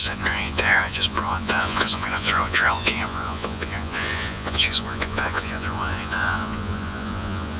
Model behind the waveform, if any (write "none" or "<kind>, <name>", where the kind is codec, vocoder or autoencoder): vocoder, Vocos